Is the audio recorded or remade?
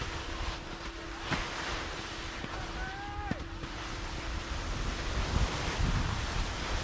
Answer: recorded